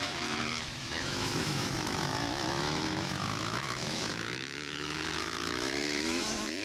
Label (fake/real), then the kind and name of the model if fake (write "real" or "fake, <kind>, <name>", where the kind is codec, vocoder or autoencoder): fake, autoencoder, DAC-VAE